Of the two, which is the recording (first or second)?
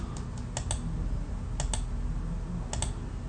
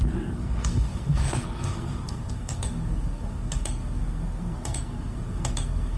first